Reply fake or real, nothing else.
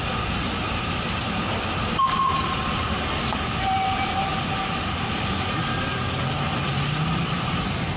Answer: real